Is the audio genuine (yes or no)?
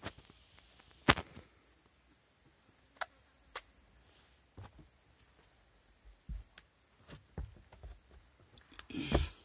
yes